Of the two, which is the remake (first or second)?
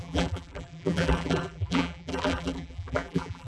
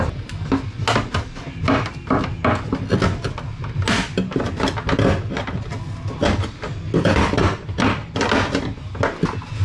first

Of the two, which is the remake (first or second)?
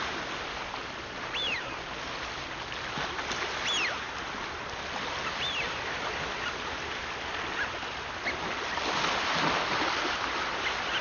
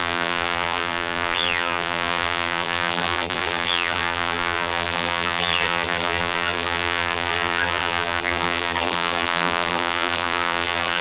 second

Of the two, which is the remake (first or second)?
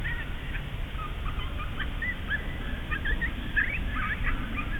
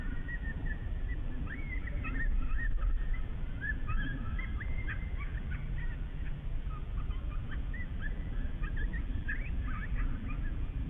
second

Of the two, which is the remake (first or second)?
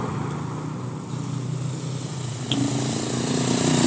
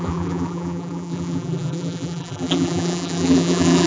second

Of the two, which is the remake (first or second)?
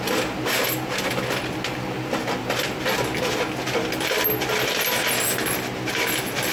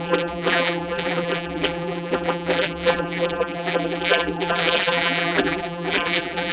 second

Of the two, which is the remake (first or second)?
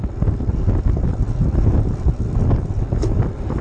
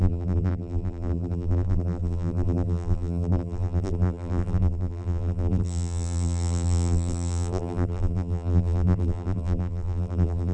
second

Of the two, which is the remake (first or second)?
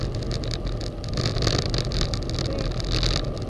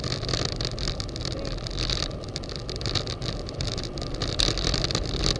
second